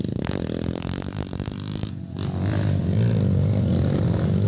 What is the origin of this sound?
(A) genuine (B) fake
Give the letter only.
A